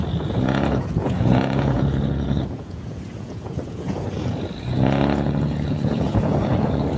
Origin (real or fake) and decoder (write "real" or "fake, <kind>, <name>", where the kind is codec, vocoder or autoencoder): fake, vocoder, Vocos